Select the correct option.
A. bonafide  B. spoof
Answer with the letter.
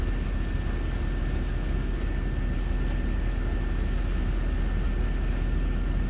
A